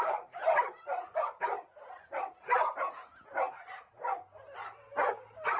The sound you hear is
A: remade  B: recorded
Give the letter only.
B